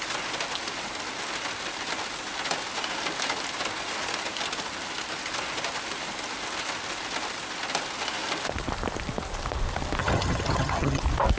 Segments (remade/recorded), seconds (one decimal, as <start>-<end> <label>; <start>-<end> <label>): 0.0-10.0 recorded; 10.0-11.0 remade; 11.0-11.4 recorded